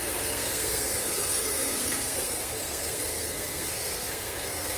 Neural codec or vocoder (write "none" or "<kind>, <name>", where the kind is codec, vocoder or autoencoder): codec, SNAC